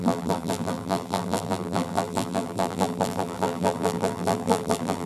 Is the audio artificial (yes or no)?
yes